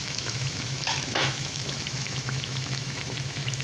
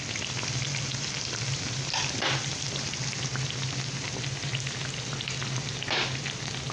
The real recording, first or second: second